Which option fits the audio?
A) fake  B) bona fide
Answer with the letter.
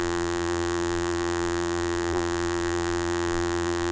A